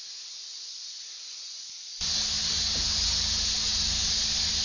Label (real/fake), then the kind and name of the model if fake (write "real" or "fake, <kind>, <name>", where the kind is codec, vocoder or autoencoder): real